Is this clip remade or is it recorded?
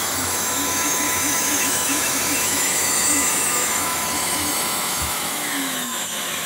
remade